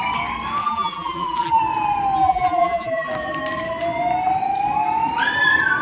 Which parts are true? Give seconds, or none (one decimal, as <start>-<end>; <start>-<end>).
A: 0.0-0.6; 1.6-2.2; 3.1-5.8